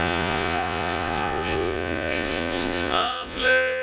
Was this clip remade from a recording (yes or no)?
yes